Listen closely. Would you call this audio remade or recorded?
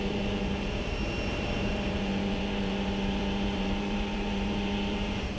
remade